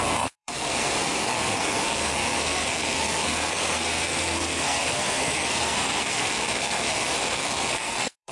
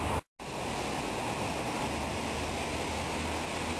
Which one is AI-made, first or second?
first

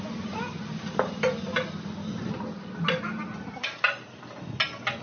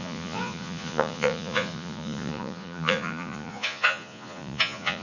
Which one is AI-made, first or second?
second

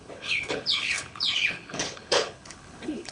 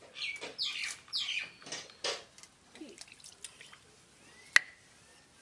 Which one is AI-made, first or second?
first